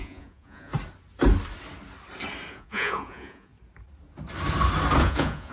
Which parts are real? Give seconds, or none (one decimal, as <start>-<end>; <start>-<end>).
0.7-2.5; 3.5-5.0